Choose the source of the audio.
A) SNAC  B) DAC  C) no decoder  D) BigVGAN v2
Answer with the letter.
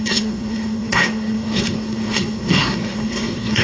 A